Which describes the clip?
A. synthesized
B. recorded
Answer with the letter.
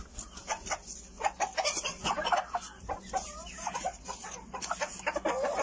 B